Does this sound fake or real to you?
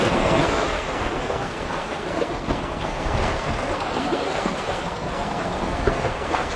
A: fake